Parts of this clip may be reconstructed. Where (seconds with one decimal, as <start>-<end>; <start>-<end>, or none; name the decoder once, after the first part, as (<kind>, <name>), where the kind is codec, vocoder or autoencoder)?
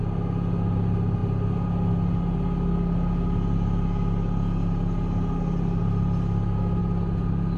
none